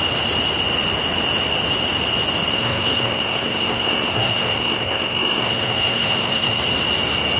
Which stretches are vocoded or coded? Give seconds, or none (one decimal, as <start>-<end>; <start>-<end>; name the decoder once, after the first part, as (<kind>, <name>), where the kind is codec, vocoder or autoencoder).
2.5-6.6 (codec, SNAC)